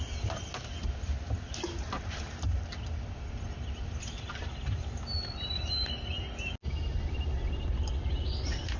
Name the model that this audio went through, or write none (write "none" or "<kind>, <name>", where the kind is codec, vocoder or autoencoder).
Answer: none